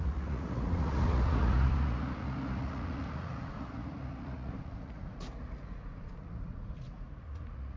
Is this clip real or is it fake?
fake